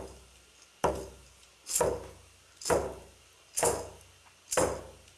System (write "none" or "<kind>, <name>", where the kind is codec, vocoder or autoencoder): none